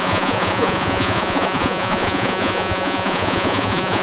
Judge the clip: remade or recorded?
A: remade